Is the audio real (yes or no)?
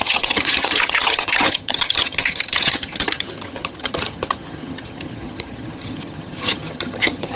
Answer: no